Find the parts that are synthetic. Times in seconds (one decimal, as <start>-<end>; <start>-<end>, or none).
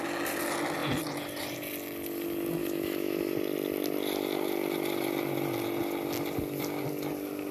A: 2.6-3.3